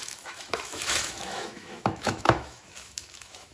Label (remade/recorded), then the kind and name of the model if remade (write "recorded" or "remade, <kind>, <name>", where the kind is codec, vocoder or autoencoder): remade, autoencoder, DAC-VAE